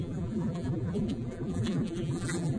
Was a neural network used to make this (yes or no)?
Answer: yes